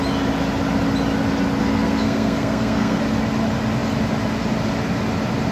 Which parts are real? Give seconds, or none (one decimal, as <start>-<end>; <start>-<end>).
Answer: 0.0-1.6; 3.0-5.5